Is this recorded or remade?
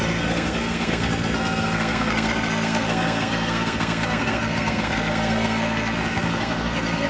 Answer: remade